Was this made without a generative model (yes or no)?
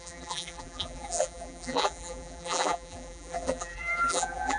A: no